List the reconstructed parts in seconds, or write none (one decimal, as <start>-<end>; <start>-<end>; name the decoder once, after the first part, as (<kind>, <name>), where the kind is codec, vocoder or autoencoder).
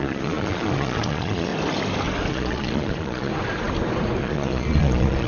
0.0-1.5 (vocoder, Vocos); 2.3-3.3; 4.2-5.3